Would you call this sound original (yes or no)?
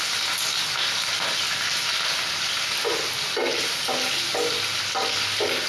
yes